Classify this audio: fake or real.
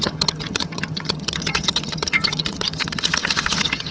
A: fake